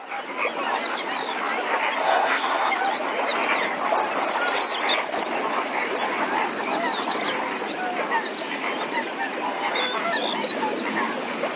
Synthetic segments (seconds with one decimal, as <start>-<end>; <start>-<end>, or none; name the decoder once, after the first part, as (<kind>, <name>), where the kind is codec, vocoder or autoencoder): 2.0-2.7 (codec, SNAC)